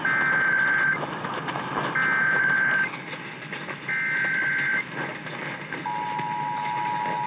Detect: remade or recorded recorded